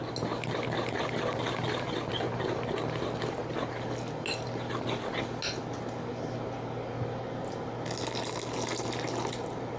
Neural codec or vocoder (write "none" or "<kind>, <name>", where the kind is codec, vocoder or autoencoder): none